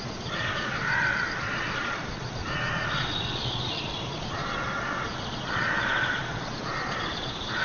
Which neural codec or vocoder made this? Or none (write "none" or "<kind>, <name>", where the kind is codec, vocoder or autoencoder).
vocoder, Vocos